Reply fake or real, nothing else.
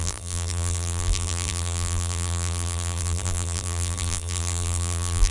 fake